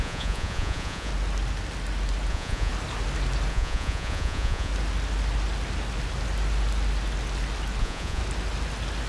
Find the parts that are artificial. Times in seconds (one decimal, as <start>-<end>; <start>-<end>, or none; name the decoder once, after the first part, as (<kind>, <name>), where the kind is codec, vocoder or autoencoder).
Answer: 0.0-1.1 (vocoder, Vocos); 2.3-2.7; 3.5-4.7; 7.8-8.2